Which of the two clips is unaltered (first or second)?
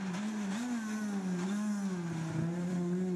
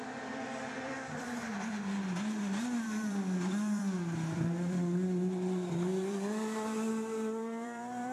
first